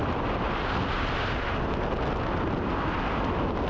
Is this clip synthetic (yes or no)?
no